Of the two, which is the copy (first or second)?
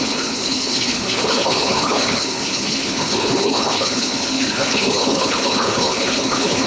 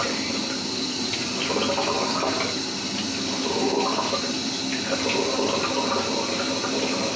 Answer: first